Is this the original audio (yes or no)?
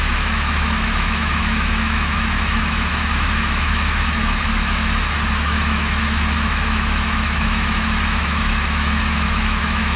no